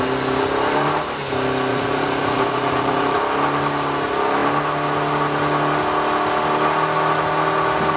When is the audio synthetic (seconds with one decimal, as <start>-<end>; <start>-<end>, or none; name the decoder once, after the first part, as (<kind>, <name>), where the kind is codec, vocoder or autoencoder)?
1.7-3.2 (vocoder, Vocos)